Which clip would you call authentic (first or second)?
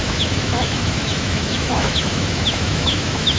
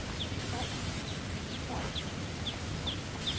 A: second